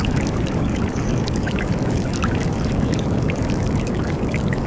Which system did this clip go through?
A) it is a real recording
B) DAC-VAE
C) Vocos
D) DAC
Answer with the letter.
D